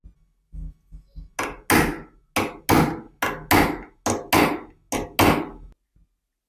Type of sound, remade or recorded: recorded